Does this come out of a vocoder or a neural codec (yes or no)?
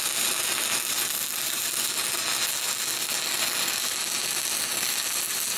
no